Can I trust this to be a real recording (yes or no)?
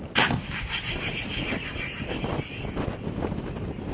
yes